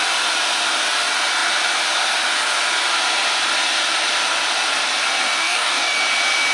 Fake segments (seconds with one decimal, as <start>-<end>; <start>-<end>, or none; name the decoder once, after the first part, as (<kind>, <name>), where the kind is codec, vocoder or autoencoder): 5.4-6.0 (codec, DAC)